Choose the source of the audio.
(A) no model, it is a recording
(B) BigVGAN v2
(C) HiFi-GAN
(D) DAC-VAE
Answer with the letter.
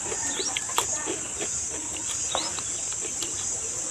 A